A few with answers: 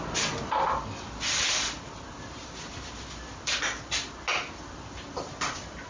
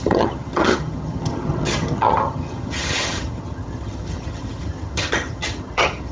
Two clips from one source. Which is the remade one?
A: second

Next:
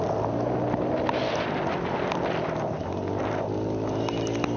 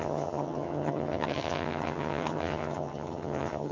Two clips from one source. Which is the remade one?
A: second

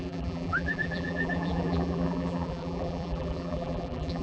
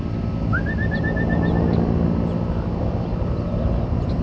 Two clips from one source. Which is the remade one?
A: first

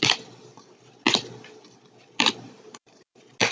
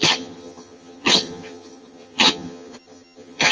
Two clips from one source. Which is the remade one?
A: second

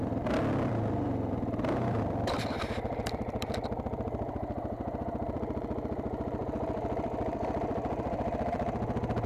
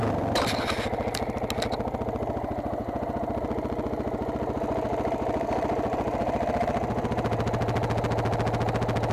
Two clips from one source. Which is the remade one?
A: first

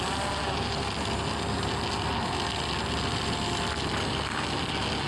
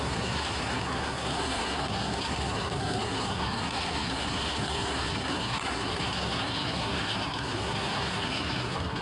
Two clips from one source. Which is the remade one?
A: second